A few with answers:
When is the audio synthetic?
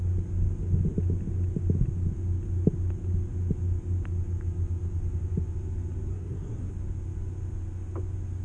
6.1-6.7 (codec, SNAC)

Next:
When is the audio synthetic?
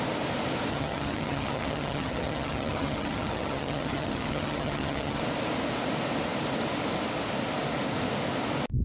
0.7-5.2 (vocoder, HiFi-GAN)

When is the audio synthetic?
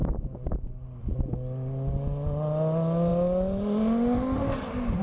none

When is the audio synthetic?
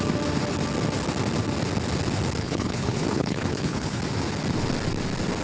2.4-4.0 (codec, HILCodec)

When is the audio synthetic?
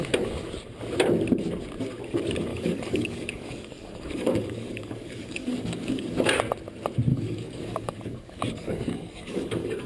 2.5-6.4 (codec, DAC); 7.1-9.9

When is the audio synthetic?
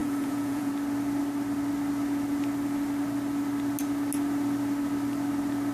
0.0-0.7 (vocoder, Vocos)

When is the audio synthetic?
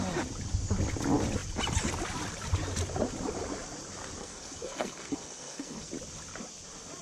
4.2-5.9 (codec, SNAC)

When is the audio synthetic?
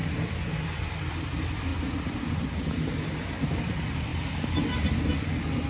none